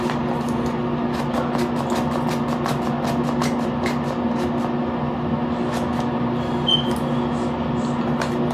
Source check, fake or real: real